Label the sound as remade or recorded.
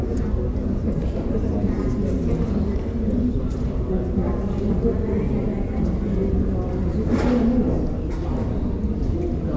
recorded